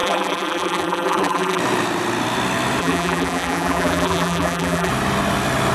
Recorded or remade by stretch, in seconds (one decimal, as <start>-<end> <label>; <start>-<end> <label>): 0.0-1.6 remade; 1.6-2.8 recorded; 2.8-4.9 remade; 4.9-5.7 recorded